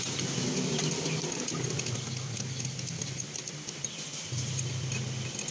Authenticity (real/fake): real